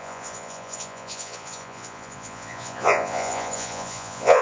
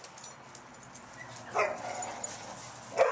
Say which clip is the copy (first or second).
first